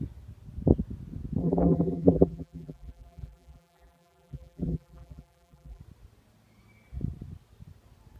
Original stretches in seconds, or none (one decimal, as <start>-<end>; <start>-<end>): 0.0-1.4; 5.8-8.2